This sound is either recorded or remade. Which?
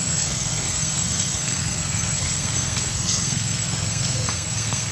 remade